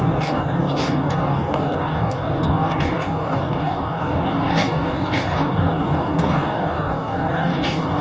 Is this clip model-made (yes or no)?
yes